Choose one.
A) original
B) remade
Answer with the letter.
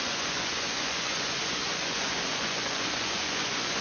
B